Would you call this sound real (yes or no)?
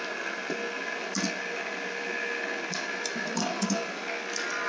yes